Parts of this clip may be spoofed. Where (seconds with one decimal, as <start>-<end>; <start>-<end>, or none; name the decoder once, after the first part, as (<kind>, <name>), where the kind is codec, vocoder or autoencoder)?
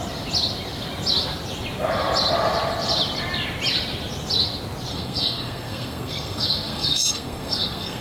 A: 4.9-8.0 (codec, SNAC)